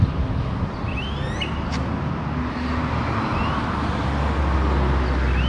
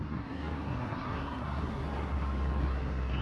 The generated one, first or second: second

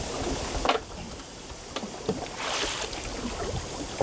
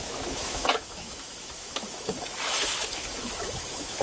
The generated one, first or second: second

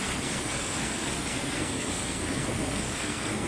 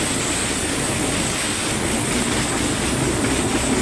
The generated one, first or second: first